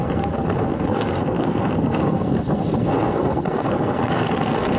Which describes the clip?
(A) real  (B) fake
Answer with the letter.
B